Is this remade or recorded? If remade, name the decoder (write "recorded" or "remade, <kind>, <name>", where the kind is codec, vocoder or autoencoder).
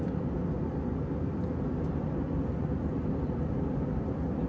recorded